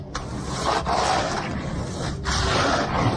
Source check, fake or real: real